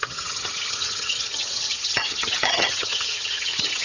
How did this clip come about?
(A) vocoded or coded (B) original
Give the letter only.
A